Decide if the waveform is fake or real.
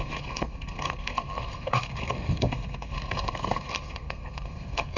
fake